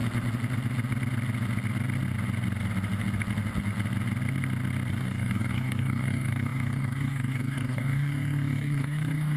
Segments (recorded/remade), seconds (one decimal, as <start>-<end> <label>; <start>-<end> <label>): 0.0-4.9 recorded; 4.9-9.4 remade